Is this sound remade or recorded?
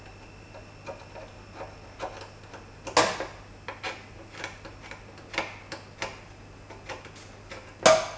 recorded